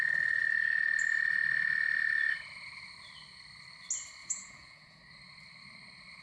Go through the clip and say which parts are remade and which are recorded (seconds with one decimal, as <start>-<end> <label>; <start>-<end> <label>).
0.0-4.2 recorded; 4.2-5.0 remade; 5.0-6.2 recorded